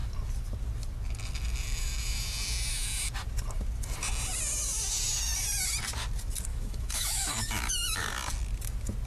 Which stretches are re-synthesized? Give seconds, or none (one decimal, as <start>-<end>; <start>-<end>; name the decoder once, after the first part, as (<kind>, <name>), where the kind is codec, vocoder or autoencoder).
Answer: 6.5-8.1 (autoencoder, DAC-VAE)